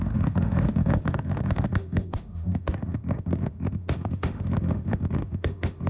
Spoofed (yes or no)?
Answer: yes